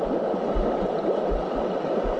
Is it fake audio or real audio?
real